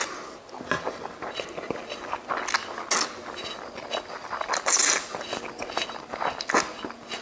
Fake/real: real